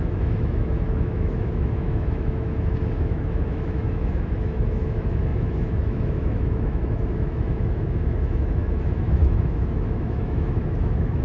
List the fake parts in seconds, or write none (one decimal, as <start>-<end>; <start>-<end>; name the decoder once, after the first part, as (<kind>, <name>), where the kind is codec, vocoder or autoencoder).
0.0-11.2 (autoencoder, DAC-VAE)